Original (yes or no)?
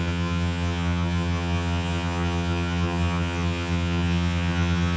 no